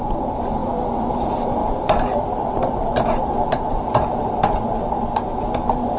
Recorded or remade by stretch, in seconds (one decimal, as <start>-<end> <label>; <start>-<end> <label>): 0.0-0.6 recorded; 0.6-1.1 remade; 1.1-1.6 recorded; 1.6-5.0 remade; 5.0-6.0 recorded